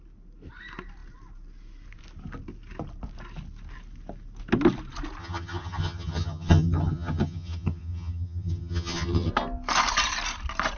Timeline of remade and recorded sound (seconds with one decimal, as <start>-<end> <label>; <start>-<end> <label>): 0.0-5.2 recorded; 5.2-9.3 remade; 9.3-10.8 recorded